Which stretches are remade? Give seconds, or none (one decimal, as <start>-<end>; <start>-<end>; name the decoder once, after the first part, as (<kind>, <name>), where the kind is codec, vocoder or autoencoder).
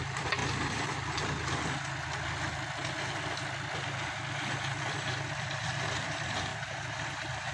0.0-0.4 (vocoder, BigVGAN v2); 4.9-7.5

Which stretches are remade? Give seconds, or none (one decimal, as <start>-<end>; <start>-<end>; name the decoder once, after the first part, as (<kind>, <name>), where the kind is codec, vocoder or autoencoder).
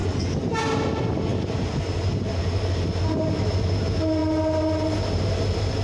1.3-2.4 (vocoder, BigVGAN v2)